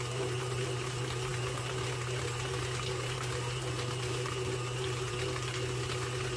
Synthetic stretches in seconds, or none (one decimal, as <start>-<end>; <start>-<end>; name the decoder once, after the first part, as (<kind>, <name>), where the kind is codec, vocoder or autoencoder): none